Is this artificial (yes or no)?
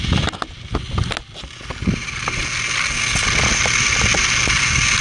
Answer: no